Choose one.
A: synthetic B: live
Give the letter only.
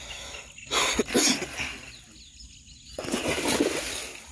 B